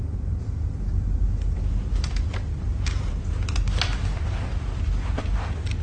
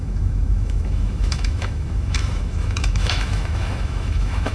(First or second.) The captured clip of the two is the first